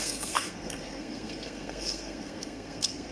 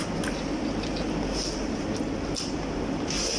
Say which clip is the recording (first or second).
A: second